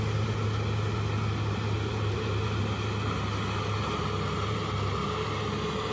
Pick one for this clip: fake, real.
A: real